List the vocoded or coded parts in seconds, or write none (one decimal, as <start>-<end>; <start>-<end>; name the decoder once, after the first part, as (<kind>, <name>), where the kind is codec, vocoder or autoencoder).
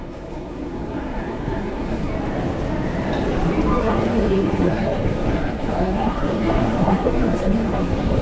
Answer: 0.0-2.1 (codec, SNAC); 3.8-8.2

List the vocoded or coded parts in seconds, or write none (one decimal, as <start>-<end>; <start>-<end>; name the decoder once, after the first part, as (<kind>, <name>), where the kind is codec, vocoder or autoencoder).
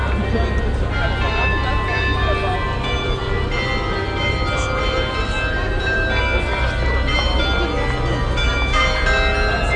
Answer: none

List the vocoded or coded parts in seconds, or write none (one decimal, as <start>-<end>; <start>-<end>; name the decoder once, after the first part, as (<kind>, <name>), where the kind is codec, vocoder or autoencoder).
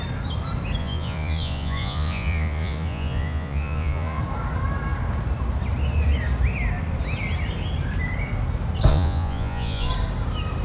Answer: 0.8-4.2 (vocoder, Vocos); 8.9-9.9